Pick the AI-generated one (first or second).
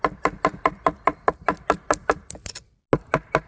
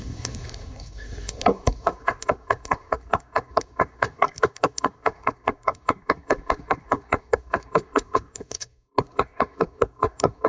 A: second